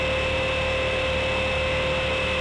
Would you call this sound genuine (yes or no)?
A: yes